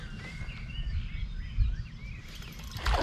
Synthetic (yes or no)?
no